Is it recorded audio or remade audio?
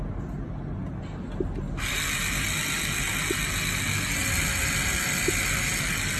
recorded